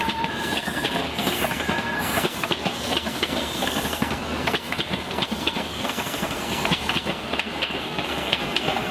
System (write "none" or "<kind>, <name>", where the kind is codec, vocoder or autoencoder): codec, SNAC